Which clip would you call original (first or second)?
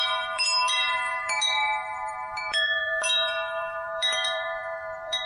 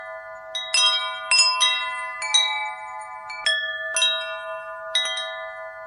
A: second